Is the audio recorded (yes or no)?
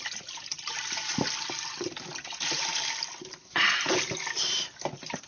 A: yes